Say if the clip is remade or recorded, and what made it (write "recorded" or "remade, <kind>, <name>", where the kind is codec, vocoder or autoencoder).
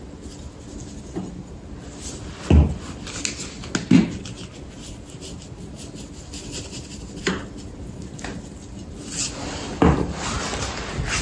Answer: recorded